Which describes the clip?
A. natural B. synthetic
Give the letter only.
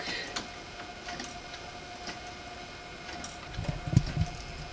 A